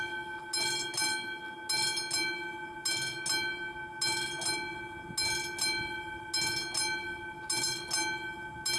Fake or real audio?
real